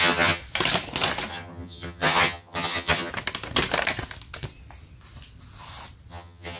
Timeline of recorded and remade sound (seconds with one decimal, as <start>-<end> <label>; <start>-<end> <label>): 0.0-0.4 remade; 0.4-1.3 recorded; 1.3-3.1 remade; 3.1-6.1 recorded; 6.1-6.6 remade